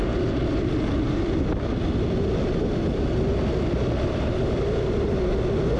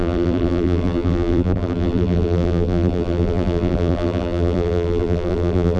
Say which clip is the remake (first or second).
second